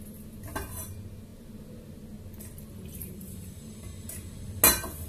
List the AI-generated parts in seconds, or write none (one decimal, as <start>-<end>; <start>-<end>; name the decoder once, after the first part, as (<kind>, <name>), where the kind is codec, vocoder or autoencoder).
3.0-3.6 (vocoder, BigVGAN v2)